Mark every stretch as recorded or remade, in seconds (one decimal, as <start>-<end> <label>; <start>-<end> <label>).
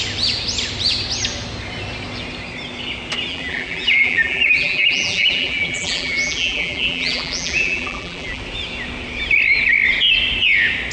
0.0-3.3 recorded; 3.3-8.4 remade; 8.4-10.9 recorded